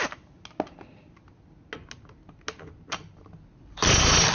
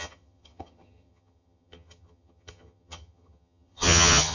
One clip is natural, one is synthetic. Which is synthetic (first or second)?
second